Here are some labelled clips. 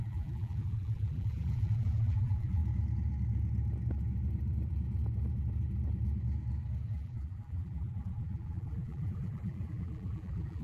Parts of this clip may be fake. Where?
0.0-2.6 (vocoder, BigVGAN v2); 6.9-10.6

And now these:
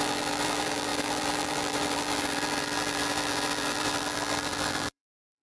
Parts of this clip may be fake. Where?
0.0-5.4 (vocoder, BigVGAN v2)

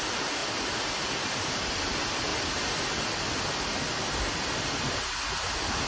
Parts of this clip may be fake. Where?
0.0-0.4 (vocoder, BigVGAN v2); 1.7-2.3

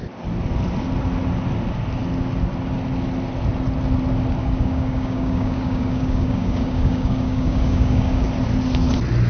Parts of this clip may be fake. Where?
4.4-8.3 (codec, DAC)

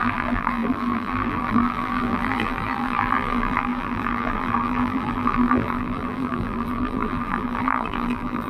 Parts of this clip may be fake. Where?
0.0-8.5 (vocoder, BigVGAN v2)